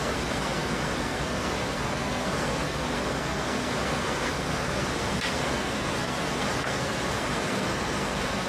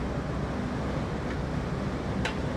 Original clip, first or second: second